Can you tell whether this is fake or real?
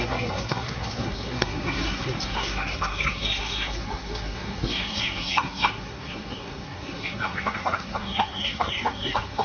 fake